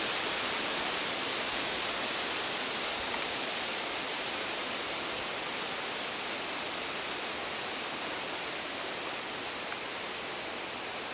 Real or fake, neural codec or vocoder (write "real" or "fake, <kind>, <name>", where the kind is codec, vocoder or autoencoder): real